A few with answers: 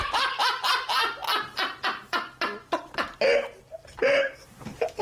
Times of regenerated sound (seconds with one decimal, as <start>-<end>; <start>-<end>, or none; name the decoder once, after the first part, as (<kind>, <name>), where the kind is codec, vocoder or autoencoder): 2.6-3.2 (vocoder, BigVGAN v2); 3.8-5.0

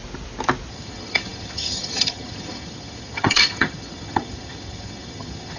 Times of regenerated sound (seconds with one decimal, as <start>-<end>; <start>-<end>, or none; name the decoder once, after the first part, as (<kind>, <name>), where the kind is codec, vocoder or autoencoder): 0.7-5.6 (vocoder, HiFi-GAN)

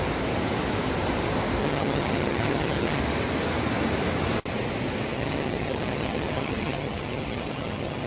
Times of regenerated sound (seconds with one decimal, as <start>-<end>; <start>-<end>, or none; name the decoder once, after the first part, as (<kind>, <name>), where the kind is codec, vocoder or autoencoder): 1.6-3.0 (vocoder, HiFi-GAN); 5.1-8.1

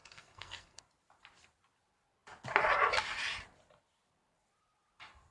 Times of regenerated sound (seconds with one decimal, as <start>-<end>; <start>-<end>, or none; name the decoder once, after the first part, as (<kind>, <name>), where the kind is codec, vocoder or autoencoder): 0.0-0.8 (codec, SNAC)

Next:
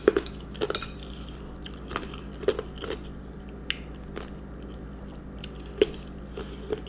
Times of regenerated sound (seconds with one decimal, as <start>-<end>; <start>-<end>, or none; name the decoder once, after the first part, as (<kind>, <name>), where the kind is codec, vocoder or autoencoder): 0.0-0.6 (autoencoder, DAC-VAE)